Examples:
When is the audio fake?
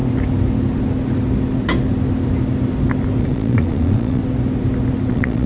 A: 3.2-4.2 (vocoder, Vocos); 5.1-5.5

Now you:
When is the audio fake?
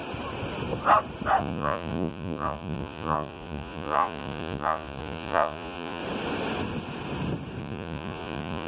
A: 1.4-6.0 (vocoder, Vocos); 7.6-8.7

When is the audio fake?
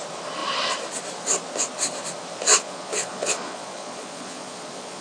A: 2.5-5.0 (vocoder, Vocos)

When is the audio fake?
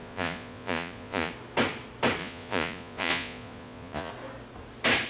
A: 0.0-1.3 (vocoder, Vocos); 2.2-4.1